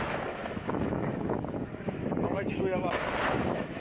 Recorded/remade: remade